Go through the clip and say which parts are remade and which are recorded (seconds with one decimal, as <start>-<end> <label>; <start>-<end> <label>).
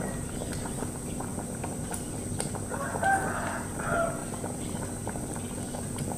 0.0-1.3 recorded; 1.3-2.5 remade; 2.5-4.2 recorded; 4.2-4.9 remade; 4.9-6.2 recorded